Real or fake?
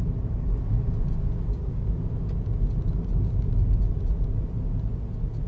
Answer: real